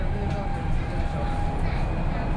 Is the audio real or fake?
real